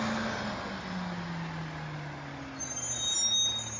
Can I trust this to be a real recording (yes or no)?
yes